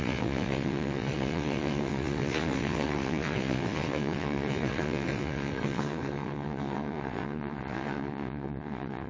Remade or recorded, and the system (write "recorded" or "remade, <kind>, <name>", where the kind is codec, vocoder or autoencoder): remade, vocoder, WaveNeXt